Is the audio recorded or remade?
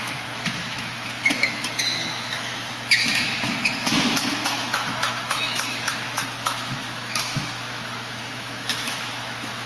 remade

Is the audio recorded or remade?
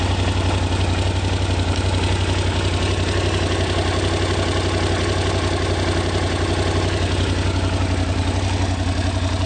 recorded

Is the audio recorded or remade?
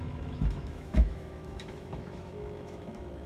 remade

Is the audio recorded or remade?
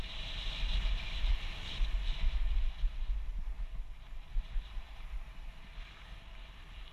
recorded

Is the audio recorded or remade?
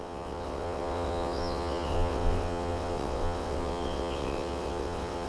remade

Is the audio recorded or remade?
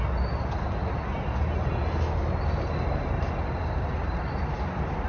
recorded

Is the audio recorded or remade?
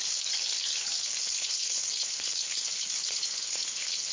remade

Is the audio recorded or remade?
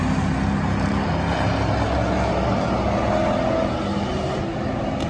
recorded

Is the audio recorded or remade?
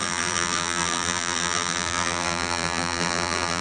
remade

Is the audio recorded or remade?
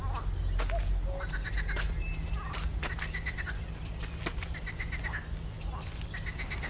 recorded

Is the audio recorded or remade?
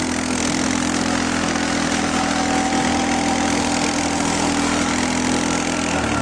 recorded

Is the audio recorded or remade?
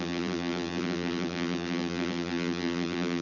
remade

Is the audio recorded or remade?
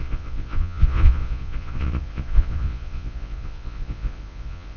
remade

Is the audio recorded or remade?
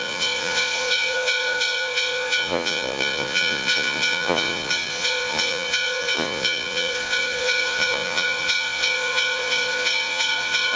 remade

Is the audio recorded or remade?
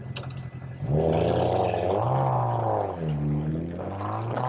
recorded